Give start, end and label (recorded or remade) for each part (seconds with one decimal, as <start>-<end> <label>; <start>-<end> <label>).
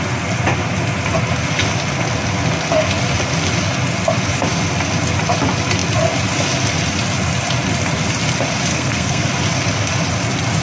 0.0-8.7 recorded; 8.7-9.3 remade; 9.3-10.6 recorded